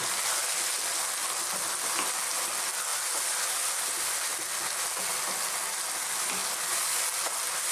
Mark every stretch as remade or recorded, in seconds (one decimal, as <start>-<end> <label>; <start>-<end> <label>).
0.0-7.7 recorded